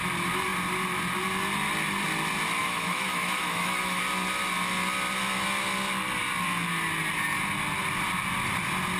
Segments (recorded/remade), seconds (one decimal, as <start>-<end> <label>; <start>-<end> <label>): 0.0-2.6 recorded; 2.6-4.0 remade; 4.0-9.0 recorded